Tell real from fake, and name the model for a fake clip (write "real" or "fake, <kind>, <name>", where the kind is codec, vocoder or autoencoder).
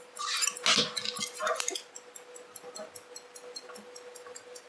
real